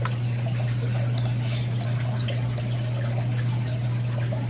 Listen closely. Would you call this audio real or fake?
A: real